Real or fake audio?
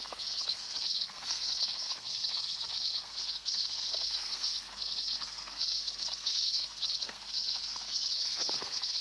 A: fake